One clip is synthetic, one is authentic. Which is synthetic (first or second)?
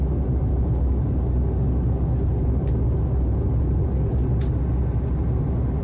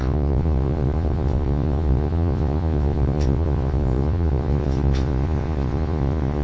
second